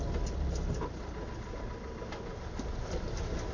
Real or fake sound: real